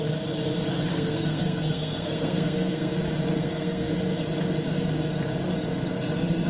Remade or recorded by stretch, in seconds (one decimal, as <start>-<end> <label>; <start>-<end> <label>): 0.0-0.9 recorded; 0.9-2.9 remade; 2.9-3.4 recorded; 3.4-3.9 remade; 3.9-6.5 recorded